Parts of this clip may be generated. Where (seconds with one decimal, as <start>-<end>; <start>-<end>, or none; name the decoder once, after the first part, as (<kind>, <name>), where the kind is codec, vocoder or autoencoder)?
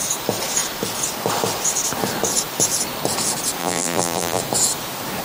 3.6-4.4 (vocoder, BigVGAN v2)